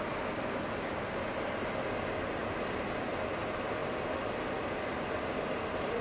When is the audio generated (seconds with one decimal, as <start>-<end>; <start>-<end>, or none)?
none